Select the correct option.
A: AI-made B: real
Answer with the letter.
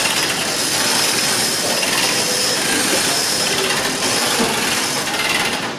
B